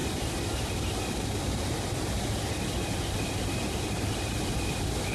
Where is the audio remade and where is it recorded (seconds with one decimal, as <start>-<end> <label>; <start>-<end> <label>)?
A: 0.0-5.1 recorded